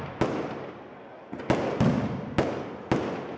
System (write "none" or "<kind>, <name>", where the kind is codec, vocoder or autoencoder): none